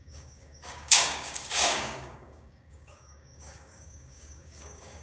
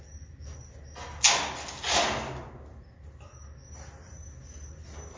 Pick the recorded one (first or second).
second